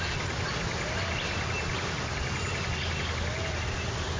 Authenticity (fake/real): real